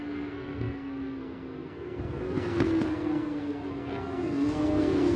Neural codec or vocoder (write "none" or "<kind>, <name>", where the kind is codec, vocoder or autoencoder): codec, SNAC